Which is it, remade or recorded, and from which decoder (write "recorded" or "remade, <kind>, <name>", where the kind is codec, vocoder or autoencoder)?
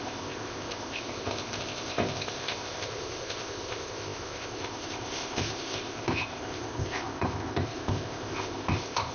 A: remade, codec, ZipCodec